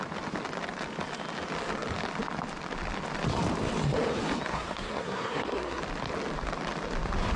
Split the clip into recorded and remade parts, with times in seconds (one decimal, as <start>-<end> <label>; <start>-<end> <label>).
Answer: 0.0-4.5 recorded; 4.5-5.8 remade; 5.8-7.4 recorded